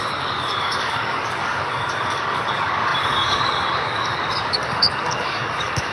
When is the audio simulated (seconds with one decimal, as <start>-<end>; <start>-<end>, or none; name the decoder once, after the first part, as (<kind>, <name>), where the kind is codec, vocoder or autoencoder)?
0.0-5.9 (codec, DAC)